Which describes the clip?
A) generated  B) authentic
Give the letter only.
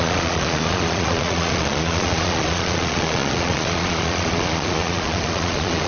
A